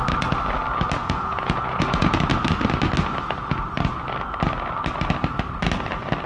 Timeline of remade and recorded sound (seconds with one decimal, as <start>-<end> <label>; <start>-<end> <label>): 0.0-1.0 recorded; 1.0-2.2 remade; 2.2-6.3 recorded